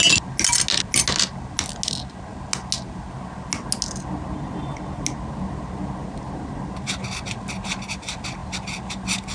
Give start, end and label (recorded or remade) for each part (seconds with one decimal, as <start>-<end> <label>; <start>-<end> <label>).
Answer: 0.0-9.3 recorded